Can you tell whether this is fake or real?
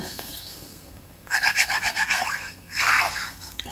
fake